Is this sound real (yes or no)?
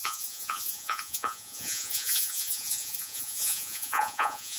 no